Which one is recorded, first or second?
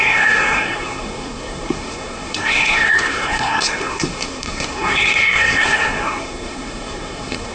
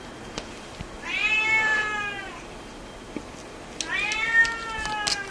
second